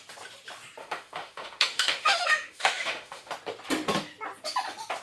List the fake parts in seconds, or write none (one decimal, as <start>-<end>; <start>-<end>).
0.8-3.3

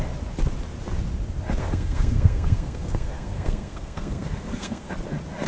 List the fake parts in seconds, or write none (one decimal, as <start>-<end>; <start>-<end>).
1.6-4.9

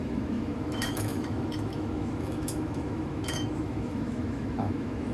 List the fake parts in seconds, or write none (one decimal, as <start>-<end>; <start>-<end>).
0.0-5.1

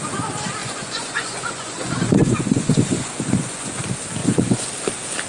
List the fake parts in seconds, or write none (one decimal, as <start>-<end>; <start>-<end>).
0.6-3.8; 4.2-4.7

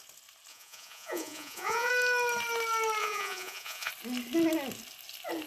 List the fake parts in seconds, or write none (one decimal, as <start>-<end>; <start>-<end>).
0.5-1.9; 3.0-3.9

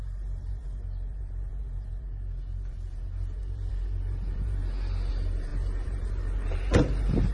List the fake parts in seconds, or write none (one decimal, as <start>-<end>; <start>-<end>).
0.0-4.6; 5.1-7.3

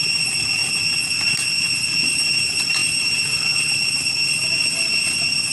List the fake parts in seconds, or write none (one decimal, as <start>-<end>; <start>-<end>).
none

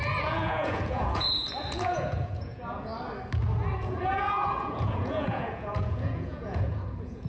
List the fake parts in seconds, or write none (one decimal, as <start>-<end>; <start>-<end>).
0.0-2.9; 3.8-7.3